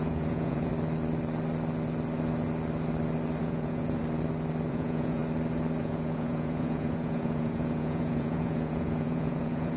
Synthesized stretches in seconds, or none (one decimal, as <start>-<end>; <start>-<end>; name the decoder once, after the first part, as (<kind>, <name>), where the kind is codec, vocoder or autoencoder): 0.0-0.7 (vocoder, Vocos); 3.4-4.0; 4.7-5.2; 5.8-9.8